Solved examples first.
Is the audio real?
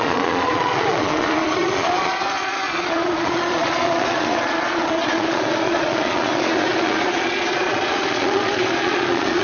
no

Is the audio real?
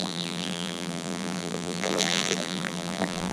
no